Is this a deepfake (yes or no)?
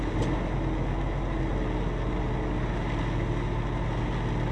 no